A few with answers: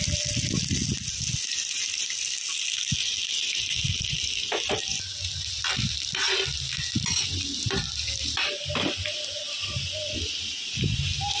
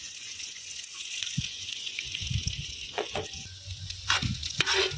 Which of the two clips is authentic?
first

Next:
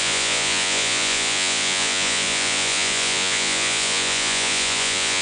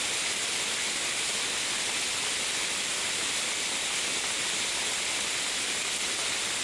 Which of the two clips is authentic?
second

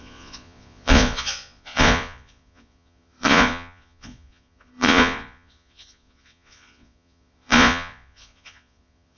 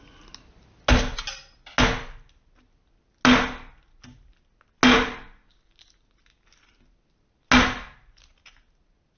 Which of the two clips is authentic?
second